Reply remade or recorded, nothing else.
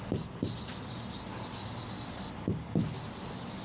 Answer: recorded